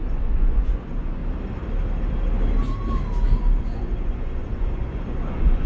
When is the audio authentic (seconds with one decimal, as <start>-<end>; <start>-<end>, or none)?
1.2-3.6